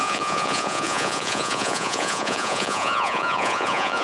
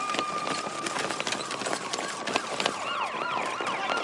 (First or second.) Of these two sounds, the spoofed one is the first